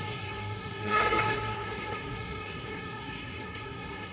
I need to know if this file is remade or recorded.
remade